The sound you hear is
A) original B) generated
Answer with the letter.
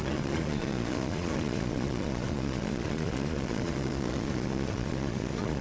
B